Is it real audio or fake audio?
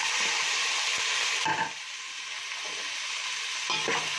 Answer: real